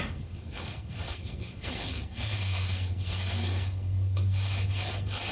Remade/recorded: remade